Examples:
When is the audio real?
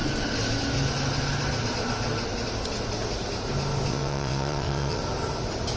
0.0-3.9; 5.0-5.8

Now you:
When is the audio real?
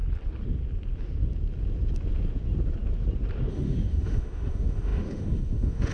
0.0-3.5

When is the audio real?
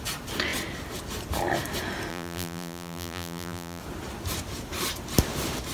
0.0-2.1; 3.8-5.7